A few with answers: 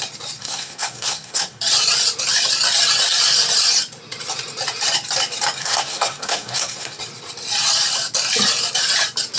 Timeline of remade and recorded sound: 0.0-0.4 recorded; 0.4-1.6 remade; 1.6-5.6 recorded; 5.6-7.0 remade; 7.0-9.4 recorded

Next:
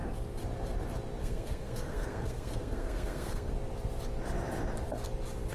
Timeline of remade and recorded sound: 0.0-1.2 recorded; 1.2-3.5 remade; 3.5-5.5 recorded

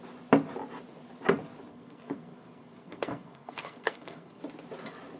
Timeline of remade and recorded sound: 0.0-1.7 recorded; 1.7-4.4 remade; 4.4-5.2 recorded

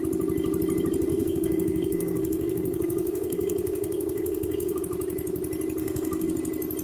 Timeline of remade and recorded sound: 0.0-1.1 recorded; 1.1-4.8 remade; 4.8-5.8 recorded; 5.8-6.3 remade; 6.3-6.8 recorded

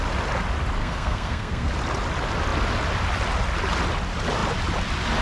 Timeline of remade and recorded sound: 0.0-0.8 recorded; 0.8-1.7 remade; 1.7-5.2 recorded

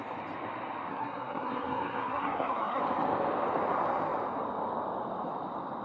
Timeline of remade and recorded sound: 0.0-0.9 recorded; 0.9-2.8 remade; 2.8-5.8 recorded

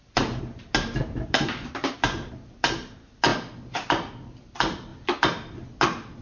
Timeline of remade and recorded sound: 0.0-6.2 recorded